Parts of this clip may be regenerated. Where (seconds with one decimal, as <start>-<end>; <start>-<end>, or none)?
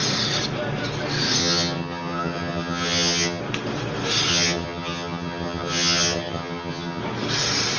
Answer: 1.4-3.4; 4.3-7.0